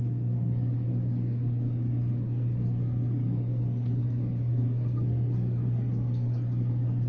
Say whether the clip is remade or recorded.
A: remade